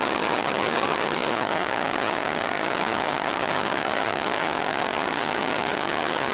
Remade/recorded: remade